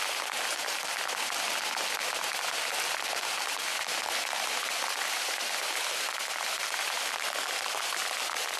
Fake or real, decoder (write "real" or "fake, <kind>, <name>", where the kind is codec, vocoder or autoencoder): real